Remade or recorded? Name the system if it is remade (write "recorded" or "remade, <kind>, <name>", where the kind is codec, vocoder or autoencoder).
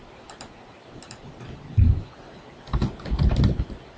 recorded